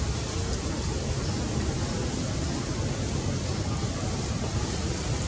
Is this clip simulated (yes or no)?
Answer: no